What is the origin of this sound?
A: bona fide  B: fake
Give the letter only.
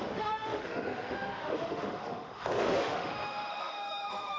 B